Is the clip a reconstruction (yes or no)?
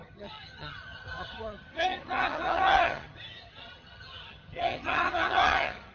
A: yes